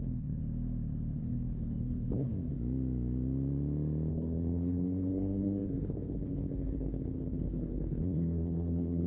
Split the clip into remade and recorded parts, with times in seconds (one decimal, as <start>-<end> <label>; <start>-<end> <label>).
0.0-0.4 remade; 0.4-1.2 recorded; 1.2-2.3 remade; 2.3-4.1 recorded; 4.1-9.1 remade